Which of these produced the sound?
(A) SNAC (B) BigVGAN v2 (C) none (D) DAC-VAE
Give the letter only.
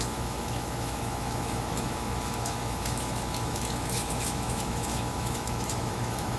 D